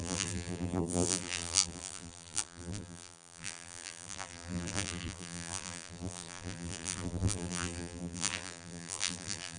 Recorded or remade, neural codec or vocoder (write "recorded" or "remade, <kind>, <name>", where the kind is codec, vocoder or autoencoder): remade, vocoder, BigVGAN v2